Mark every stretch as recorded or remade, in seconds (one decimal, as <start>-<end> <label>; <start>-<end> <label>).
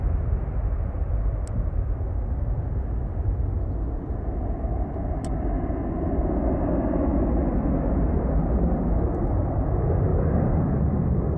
0.0-10.1 recorded; 10.1-10.8 remade; 10.8-11.4 recorded